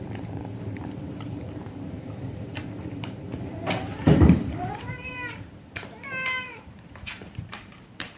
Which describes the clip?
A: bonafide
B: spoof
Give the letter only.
B